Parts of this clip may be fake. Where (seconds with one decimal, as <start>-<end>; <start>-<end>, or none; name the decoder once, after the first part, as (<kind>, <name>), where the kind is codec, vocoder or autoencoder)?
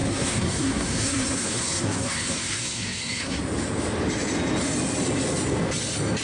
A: 0.0-3.4 (codec, SNAC)